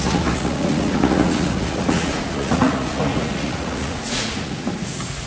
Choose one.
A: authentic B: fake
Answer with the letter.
B